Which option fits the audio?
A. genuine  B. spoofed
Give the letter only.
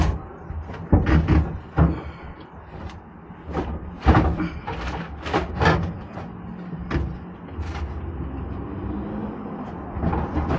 A